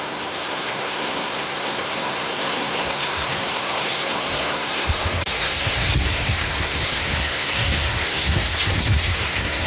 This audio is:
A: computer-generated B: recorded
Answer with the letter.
A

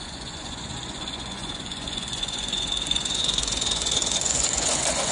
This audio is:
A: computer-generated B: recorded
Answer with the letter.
A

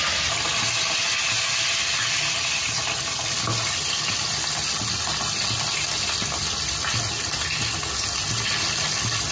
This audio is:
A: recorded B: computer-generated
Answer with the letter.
A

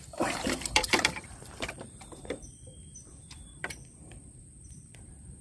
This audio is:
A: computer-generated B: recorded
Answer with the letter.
A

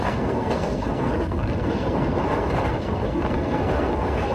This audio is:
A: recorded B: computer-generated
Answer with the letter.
B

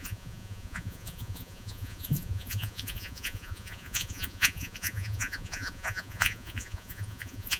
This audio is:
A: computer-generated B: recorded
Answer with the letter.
A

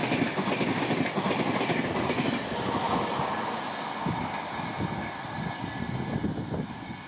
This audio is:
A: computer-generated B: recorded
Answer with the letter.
B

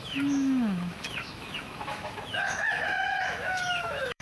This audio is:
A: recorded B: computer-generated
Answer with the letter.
B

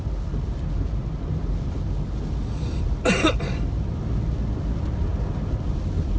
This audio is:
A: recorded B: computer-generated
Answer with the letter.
A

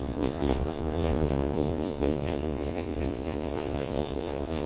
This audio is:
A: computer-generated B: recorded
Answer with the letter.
A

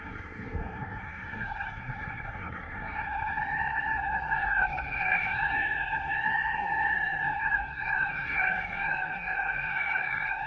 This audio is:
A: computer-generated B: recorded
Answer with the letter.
A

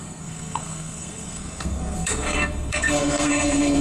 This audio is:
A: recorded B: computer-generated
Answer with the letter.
B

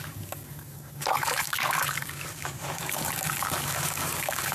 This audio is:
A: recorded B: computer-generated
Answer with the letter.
B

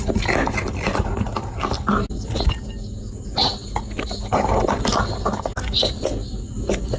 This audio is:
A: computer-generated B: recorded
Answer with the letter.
B